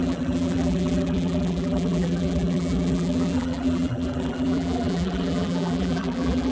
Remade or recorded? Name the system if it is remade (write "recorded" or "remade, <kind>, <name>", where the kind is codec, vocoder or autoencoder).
remade, vocoder, BigVGAN v2